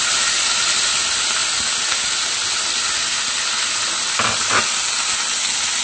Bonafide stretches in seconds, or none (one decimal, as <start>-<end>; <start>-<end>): 0.0-5.8